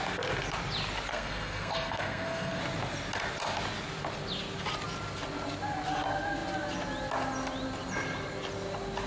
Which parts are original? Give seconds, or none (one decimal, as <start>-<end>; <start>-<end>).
0.0-1.1; 2.6-9.1